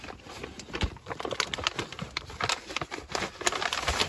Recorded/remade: recorded